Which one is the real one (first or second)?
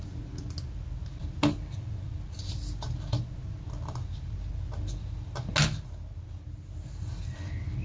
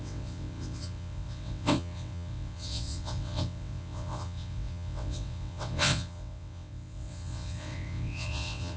first